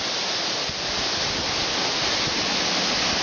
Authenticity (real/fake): real